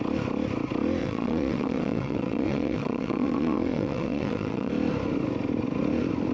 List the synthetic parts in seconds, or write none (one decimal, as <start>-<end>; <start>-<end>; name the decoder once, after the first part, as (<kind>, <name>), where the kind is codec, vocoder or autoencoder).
1.0-4.7 (vocoder, WaveNeXt)